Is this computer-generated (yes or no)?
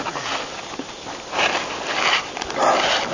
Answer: no